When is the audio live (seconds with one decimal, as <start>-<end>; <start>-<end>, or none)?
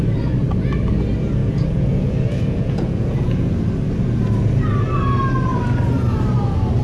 0.0-1.4; 3.5-6.8